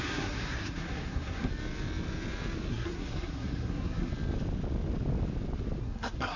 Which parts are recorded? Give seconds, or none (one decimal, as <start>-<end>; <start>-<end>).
1.5-2.7; 4.1-5.8